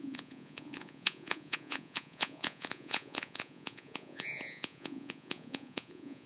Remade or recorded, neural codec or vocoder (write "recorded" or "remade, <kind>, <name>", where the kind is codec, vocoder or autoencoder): remade, vocoder, Vocos